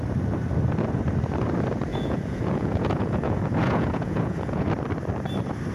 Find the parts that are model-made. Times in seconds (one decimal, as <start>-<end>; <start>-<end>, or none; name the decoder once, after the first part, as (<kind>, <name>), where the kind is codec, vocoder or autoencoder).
1.9-4.7 (vocoder, Vocos)